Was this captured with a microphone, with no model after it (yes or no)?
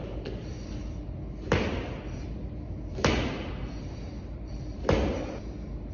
yes